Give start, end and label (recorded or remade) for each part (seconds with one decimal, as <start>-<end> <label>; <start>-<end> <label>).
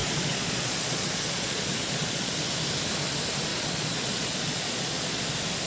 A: 0.0-2.3 remade; 2.3-3.5 recorded; 3.5-5.2 remade; 5.2-5.7 recorded